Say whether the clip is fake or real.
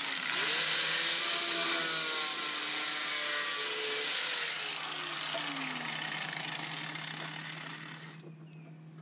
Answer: real